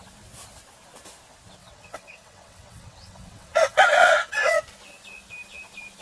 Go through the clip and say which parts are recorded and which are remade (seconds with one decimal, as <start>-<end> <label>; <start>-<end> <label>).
0.0-1.6 recorded; 1.6-4.6 remade; 4.6-6.0 recorded